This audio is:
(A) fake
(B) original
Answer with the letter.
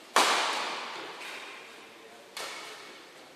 B